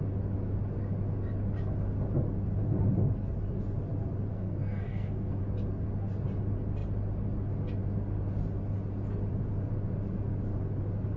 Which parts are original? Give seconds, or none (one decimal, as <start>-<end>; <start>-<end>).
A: 0.0-4.3; 5.4-11.2